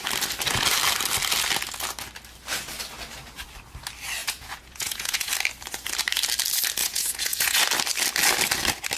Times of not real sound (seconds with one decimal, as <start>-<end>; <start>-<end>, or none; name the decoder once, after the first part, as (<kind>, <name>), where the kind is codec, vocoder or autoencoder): 4.2-5.3 (vocoder, Vocos); 6.8-7.6